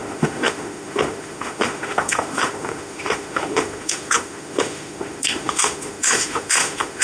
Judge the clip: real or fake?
fake